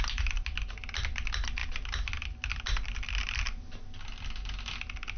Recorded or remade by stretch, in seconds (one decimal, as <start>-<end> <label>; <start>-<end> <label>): 0.0-5.2 recorded